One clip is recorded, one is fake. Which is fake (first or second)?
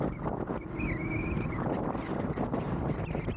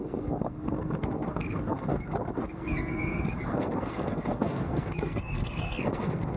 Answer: second